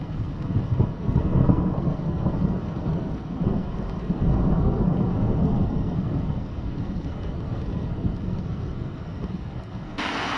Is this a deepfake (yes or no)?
yes